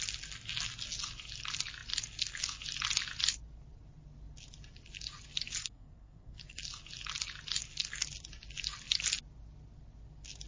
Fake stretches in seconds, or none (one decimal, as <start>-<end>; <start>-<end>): 5.6-6.6